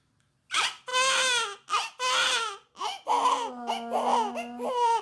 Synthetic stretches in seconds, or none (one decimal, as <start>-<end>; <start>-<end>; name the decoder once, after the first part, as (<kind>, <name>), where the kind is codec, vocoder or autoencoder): none